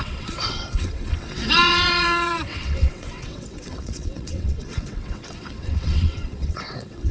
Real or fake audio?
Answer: fake